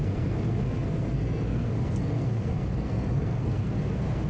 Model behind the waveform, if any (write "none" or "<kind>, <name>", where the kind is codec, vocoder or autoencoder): codec, SNAC